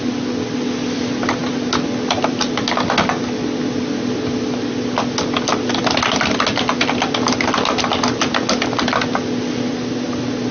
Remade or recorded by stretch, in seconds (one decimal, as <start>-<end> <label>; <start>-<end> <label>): 0.0-10.5 recorded